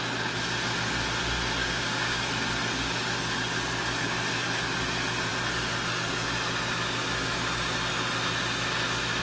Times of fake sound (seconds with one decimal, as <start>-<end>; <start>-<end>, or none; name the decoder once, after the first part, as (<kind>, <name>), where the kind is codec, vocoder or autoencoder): 1.6-2.2 (codec, DAC)